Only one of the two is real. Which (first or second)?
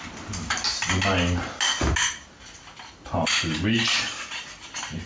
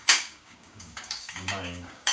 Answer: first